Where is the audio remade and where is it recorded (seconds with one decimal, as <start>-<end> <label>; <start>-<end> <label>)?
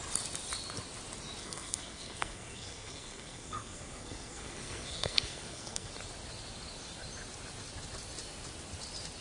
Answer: 0.0-1.4 recorded; 1.4-5.9 remade; 5.9-9.2 recorded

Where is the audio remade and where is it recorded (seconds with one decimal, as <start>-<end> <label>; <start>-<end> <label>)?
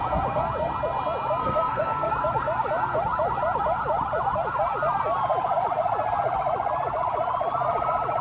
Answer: 0.0-1.4 recorded; 1.4-2.1 remade; 2.1-8.2 recorded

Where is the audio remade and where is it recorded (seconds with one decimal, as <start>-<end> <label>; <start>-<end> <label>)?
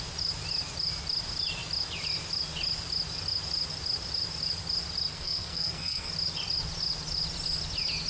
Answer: 0.0-5.1 recorded; 5.1-6.1 remade; 6.1-8.1 recorded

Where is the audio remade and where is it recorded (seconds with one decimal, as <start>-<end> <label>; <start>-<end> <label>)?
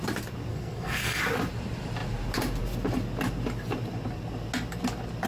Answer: 0.0-0.5 recorded; 0.5-1.2 remade; 1.2-5.3 recorded